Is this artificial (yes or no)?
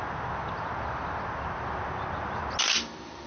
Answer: no